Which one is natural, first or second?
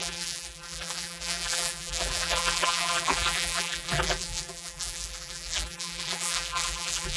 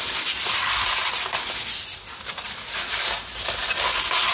second